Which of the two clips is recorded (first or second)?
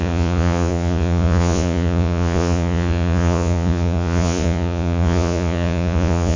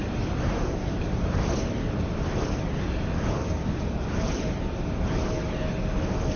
second